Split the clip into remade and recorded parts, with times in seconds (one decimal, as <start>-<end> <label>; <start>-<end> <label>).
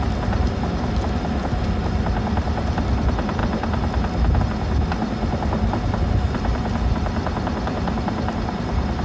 0.0-9.0 recorded